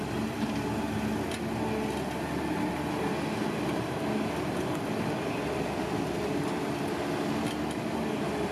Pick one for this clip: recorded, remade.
recorded